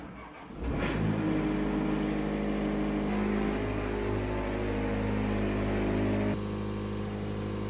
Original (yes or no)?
yes